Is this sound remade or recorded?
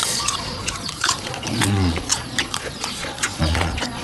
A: remade